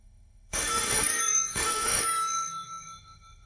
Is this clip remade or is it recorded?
remade